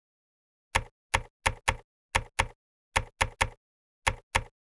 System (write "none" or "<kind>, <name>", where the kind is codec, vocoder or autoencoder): none